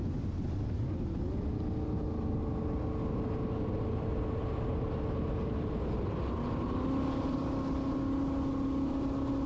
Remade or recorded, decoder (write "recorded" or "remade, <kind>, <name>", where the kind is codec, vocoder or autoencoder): recorded